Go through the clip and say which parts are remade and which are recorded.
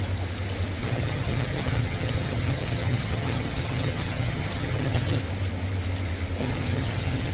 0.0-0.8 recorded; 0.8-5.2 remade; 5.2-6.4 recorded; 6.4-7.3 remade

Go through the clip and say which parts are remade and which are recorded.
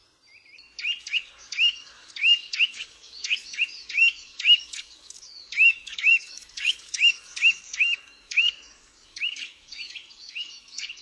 0.0-1.0 recorded; 1.0-11.0 remade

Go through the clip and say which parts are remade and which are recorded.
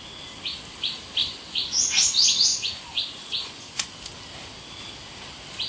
0.0-1.2 recorded; 1.2-2.1 remade; 2.1-2.5 recorded; 2.5-4.0 remade; 4.0-5.7 recorded